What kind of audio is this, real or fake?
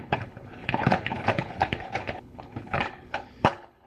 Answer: fake